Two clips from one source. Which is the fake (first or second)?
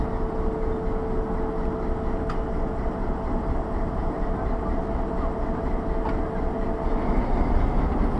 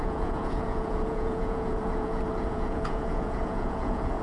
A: second